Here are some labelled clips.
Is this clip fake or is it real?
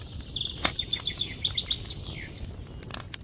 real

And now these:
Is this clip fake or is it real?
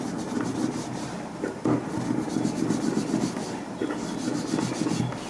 real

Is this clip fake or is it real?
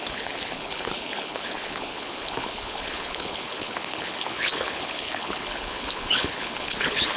fake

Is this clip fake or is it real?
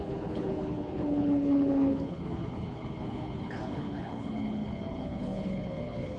fake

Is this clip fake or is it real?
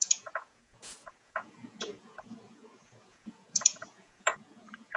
fake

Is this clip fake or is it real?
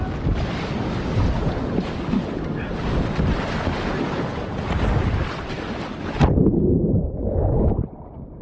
real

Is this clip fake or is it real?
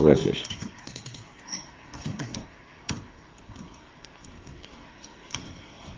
fake